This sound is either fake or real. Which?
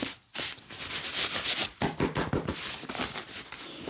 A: real